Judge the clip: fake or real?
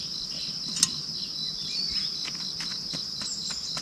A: real